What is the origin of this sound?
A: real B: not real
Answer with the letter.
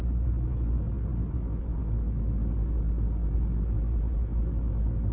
A